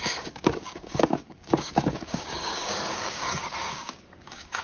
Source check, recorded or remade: remade